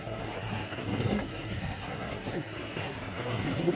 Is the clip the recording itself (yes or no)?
no